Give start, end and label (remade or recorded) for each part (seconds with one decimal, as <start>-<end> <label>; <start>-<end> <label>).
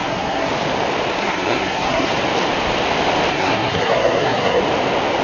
0.0-0.5 remade; 0.5-1.2 recorded; 1.2-2.1 remade; 2.1-3.3 recorded; 3.3-4.6 remade; 4.6-5.2 recorded